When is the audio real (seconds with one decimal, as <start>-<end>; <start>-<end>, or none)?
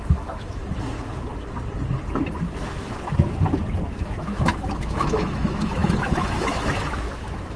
0.6-4.0